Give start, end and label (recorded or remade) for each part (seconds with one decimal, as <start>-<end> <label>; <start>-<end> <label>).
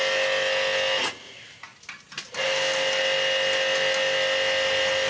0.0-5.1 recorded